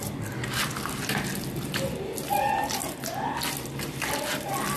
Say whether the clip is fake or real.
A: real